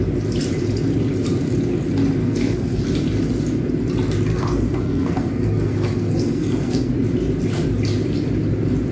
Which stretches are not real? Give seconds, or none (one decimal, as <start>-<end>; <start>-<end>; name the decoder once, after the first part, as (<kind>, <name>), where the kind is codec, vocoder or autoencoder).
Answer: 2.2-2.8 (codec, SNAC); 4.3-6.9